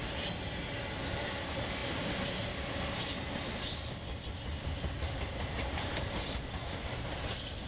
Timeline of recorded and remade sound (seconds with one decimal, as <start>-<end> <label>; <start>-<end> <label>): 0.0-1.8 recorded; 1.8-3.0 remade; 3.0-7.7 recorded